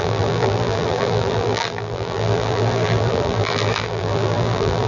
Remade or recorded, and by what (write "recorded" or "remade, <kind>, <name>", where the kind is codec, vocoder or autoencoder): remade, vocoder, BigVGAN v2